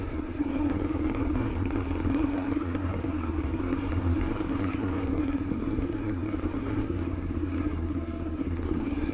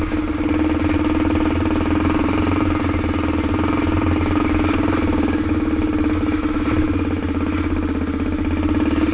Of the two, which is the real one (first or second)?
second